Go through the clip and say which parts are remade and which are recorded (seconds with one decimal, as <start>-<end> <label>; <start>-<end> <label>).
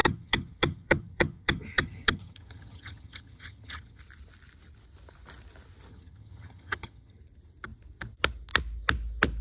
0.0-4.0 remade; 4.0-5.9 recorded; 5.9-7.2 remade; 7.2-9.4 recorded